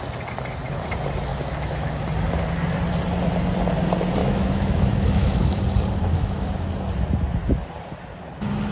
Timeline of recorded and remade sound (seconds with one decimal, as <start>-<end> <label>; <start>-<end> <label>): 0.0-1.3 recorded; 1.3-1.9 remade; 1.9-4.2 recorded; 4.2-5.6 remade; 5.6-6.0 recorded; 6.0-6.5 remade; 6.5-8.7 recorded